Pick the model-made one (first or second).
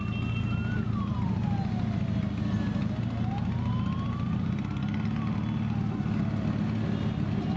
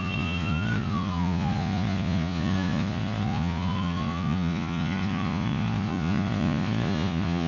second